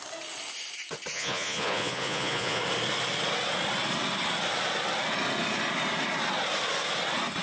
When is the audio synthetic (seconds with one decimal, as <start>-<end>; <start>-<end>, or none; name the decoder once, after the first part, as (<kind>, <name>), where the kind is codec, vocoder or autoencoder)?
1.1-2.6 (vocoder, Vocos)